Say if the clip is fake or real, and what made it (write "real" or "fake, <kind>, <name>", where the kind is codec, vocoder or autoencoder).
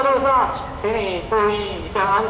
fake, autoencoder, DAC-VAE